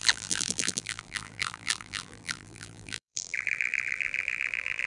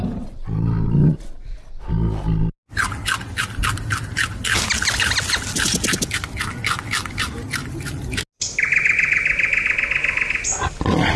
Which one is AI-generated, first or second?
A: first